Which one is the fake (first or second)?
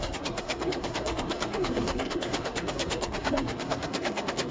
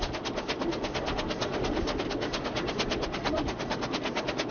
first